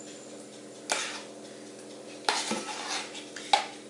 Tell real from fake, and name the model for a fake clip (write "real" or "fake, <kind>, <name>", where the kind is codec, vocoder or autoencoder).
real